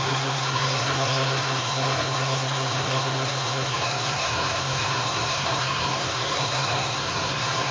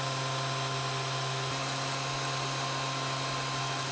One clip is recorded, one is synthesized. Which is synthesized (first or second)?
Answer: first